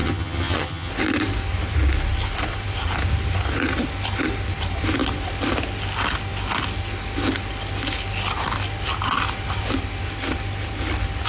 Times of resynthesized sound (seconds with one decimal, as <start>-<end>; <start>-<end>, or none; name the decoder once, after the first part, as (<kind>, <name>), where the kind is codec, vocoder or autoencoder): 0.0-0.9 (vocoder, HiFi-GAN)